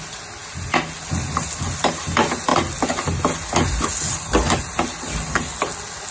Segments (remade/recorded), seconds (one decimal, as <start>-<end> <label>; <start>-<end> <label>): 0.0-6.1 recorded